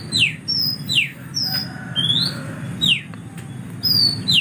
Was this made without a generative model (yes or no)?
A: yes